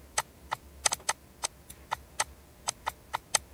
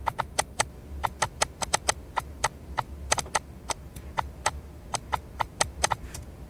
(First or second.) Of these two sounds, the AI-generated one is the second